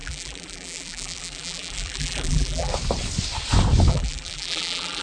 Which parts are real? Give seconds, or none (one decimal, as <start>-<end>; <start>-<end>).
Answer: 2.7-3.9